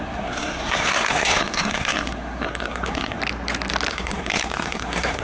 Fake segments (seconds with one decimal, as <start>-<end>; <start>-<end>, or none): 0.0-3.2; 3.9-5.2